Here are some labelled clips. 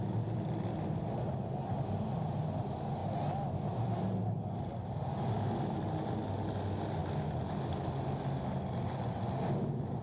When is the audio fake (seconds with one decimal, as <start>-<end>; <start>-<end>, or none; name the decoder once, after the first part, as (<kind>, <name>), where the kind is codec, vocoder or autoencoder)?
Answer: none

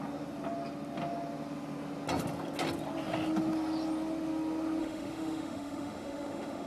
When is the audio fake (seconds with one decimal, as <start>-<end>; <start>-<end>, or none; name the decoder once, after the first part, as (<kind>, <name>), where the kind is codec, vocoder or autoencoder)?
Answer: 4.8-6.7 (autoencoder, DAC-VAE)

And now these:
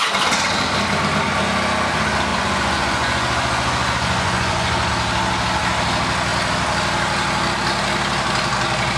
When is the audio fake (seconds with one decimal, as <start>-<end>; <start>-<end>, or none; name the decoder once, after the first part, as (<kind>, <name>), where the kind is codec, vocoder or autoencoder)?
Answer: 2.3-4.9 (vocoder, Vocos)

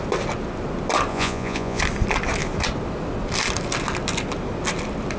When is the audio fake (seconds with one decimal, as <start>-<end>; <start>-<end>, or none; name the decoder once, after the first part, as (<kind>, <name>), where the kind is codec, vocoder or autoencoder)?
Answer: 1.1-1.8 (vocoder, Vocos)